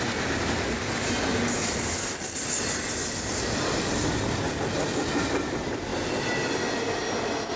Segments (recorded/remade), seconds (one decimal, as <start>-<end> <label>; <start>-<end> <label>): 0.0-7.6 recorded